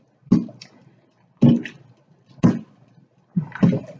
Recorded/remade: recorded